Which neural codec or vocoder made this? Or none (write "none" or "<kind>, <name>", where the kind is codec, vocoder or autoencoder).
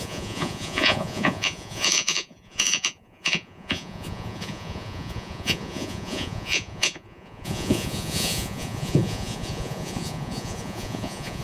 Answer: vocoder, Vocos